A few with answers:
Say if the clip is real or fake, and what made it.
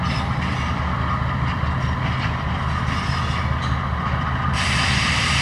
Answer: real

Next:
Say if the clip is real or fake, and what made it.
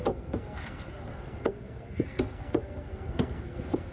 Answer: fake, codec, SNAC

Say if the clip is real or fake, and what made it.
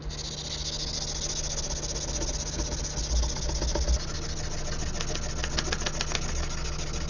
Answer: real